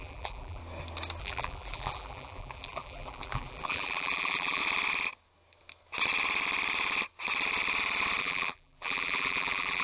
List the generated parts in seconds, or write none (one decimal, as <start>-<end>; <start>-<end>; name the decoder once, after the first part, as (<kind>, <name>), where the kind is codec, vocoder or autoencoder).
0.0-0.6 (vocoder, BigVGAN v2); 1.2-4.6; 8.2-9.8